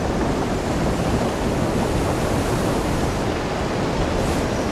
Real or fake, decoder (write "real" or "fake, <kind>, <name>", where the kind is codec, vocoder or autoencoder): real